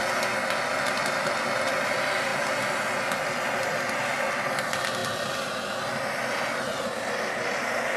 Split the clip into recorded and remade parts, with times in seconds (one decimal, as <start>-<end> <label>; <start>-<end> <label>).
0.0-8.0 recorded